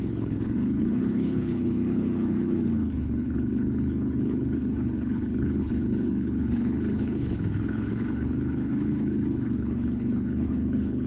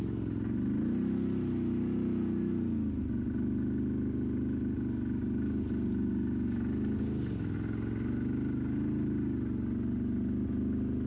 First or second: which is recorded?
second